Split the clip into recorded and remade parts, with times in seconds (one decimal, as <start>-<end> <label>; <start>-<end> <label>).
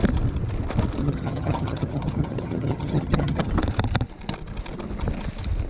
0.0-1.0 recorded; 1.0-3.5 remade; 3.5-5.7 recorded